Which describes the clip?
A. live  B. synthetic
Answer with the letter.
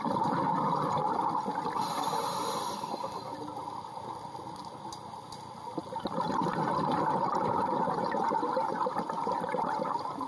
A